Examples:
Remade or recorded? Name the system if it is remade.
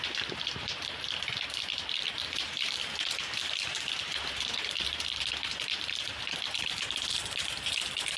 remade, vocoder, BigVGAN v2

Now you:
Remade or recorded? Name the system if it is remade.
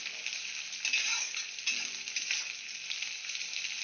recorded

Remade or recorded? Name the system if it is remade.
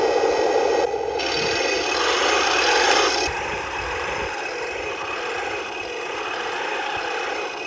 recorded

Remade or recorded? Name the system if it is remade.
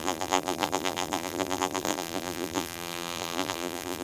remade, vocoder, BigVGAN v2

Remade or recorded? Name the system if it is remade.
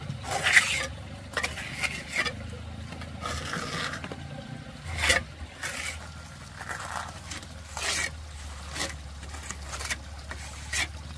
recorded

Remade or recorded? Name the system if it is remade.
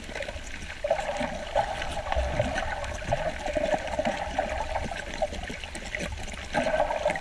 recorded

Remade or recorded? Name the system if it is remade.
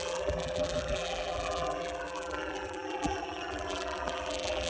remade, vocoder, BigVGAN v2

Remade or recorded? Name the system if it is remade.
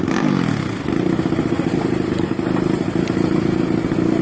recorded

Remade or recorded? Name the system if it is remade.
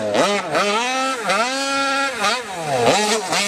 recorded